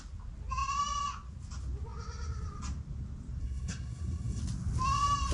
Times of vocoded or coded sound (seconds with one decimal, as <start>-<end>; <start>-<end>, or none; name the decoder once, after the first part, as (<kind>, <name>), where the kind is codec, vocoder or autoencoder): 3.4-4.4 (codec, SNAC)